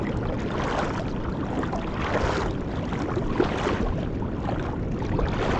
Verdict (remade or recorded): recorded